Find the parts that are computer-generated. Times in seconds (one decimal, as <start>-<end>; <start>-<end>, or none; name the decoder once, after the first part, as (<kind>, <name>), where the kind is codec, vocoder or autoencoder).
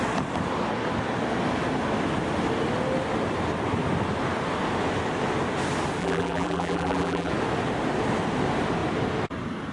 6.0-7.3 (vocoder, BigVGAN v2)